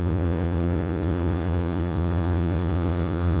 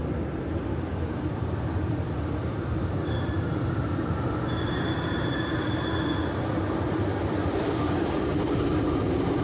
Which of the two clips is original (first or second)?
second